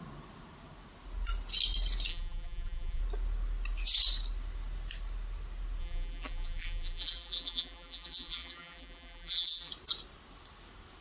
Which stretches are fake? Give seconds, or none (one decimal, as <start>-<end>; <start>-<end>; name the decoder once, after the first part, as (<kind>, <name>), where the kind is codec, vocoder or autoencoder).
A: 2.1-3.0 (vocoder, BigVGAN v2); 5.8-9.7